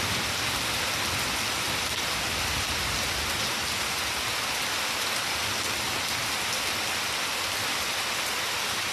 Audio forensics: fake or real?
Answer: real